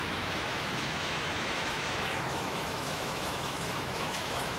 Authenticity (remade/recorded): remade